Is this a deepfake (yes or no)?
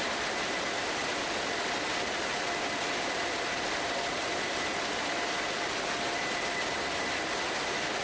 no